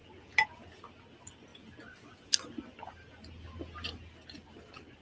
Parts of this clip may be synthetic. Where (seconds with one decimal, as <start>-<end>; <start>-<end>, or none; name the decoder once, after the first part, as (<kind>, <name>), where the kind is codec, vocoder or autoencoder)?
0.0-0.8 (vocoder, Vocos)